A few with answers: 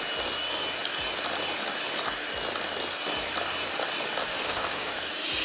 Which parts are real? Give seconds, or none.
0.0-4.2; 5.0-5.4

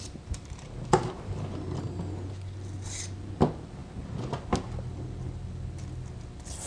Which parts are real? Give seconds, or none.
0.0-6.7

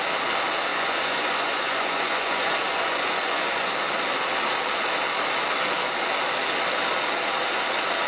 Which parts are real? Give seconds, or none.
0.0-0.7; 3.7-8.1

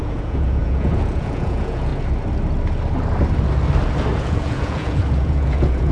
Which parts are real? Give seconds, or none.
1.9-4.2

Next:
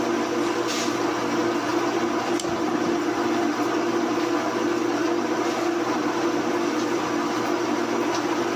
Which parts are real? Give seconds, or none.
0.0-8.6

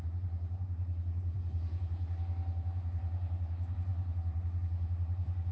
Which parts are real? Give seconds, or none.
none